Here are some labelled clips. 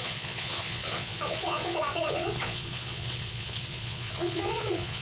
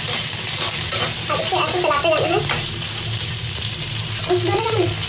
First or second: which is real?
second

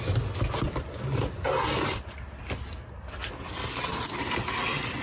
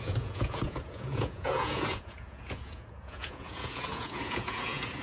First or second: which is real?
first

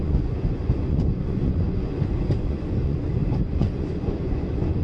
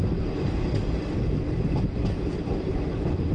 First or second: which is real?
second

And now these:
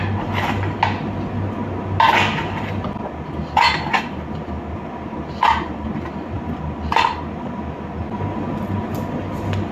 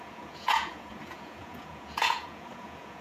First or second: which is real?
first